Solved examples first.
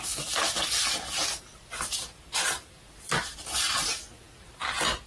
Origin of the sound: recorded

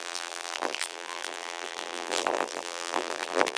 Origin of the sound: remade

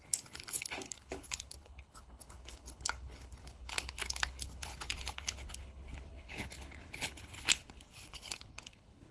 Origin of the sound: remade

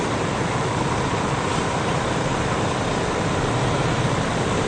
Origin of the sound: remade